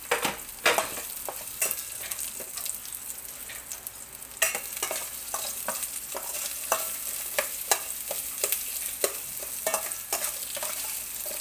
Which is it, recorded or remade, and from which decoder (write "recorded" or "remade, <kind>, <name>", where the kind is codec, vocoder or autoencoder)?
recorded